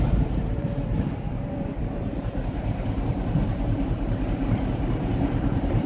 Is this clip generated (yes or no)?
yes